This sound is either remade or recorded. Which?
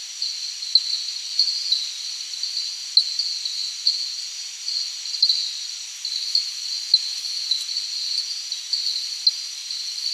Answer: recorded